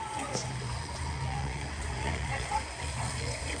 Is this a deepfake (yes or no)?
yes